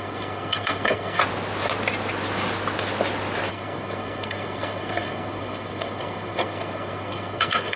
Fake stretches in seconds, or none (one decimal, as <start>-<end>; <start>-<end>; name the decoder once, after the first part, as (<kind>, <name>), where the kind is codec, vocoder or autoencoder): 0.0-1.2 (codec, SNAC); 3.5-7.8